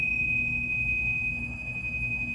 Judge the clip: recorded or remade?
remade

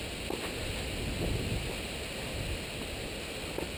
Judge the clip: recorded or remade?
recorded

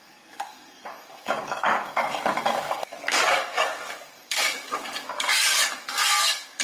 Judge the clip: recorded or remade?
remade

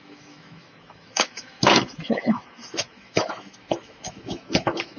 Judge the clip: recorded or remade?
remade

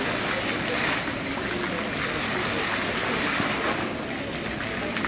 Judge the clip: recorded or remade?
recorded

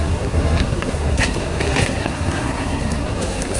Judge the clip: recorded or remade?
remade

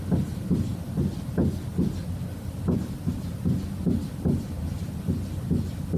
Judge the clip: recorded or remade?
recorded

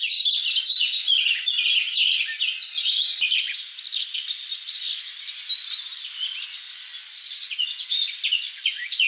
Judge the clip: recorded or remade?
recorded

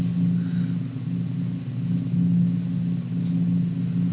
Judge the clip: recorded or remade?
recorded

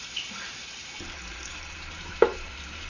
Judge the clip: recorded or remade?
remade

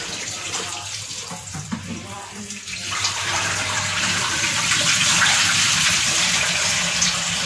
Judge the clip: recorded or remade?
remade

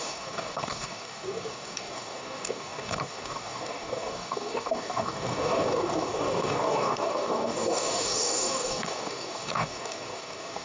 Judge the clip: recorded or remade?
remade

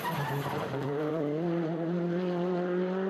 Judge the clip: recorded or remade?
remade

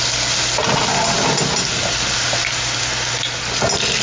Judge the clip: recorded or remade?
recorded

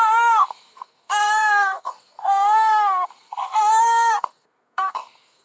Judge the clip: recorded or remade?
remade